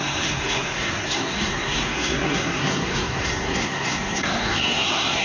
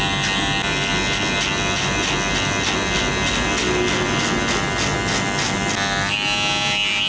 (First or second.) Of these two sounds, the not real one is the first